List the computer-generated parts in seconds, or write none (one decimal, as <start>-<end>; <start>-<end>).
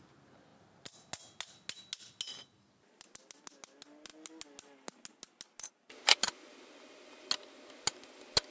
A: none